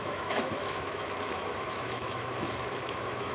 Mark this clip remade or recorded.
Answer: remade